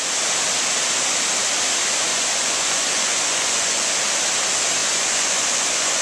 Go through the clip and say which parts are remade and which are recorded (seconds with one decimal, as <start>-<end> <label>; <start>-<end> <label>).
0.0-2.1 recorded; 2.1-3.9 remade; 3.9-4.8 recorded; 4.8-6.0 remade